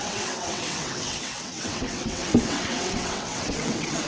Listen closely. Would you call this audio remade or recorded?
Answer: remade